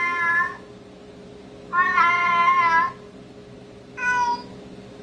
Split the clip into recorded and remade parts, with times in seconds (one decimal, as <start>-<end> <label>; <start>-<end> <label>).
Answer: 0.0-5.0 recorded